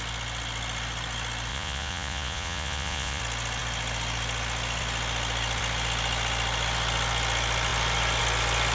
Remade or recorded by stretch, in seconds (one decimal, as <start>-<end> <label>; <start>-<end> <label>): 0.0-1.5 recorded; 1.5-3.2 remade; 3.2-8.7 recorded